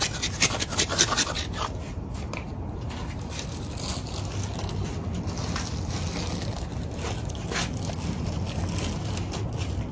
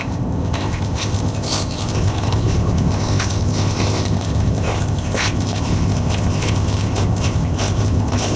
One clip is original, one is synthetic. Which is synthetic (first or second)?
second